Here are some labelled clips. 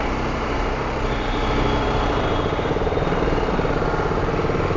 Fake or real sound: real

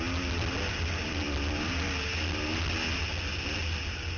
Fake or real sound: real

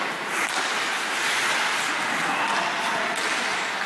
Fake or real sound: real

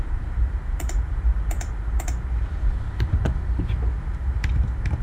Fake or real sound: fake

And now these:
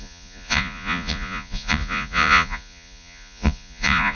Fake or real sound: fake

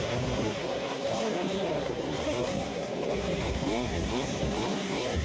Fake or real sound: fake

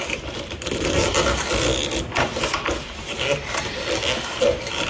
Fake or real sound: real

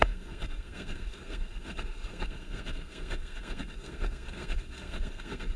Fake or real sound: fake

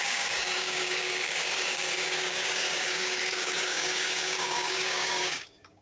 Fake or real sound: fake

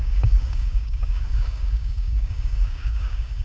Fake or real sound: fake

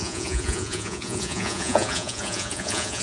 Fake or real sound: fake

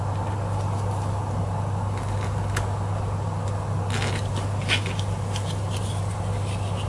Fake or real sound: real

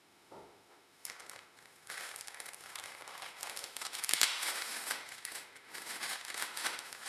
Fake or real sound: fake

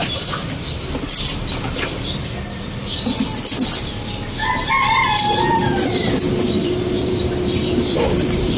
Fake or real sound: fake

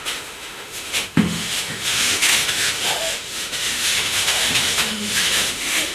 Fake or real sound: fake